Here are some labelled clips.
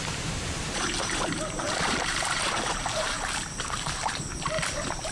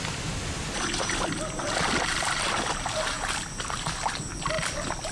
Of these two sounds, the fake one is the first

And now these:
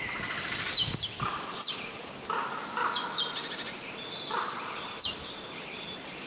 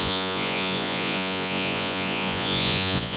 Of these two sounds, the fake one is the second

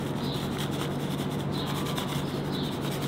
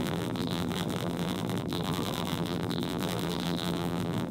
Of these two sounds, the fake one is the second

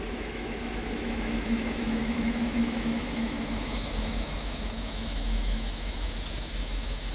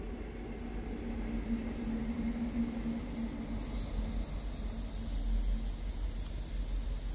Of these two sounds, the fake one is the first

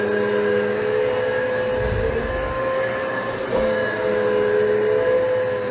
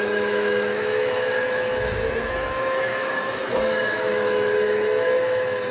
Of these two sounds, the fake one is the second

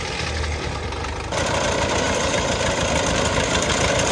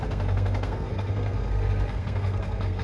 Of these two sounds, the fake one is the second